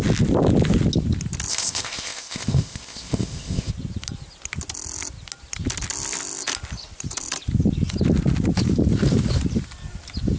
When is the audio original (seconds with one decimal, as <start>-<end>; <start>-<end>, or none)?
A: 0.0-1.5; 3.7-10.4